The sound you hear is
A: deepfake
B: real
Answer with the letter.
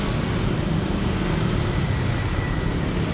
B